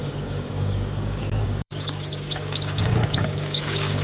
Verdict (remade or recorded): remade